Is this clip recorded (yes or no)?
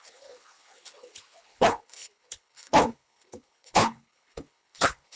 no